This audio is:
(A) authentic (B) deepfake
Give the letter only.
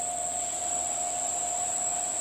A